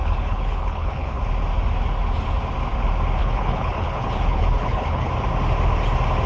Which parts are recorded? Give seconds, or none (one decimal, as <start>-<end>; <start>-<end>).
1.2-3.2; 5.1-6.3